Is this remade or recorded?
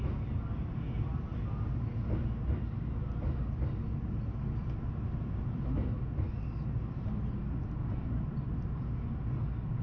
recorded